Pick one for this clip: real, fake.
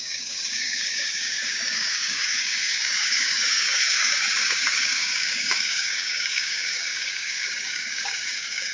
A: fake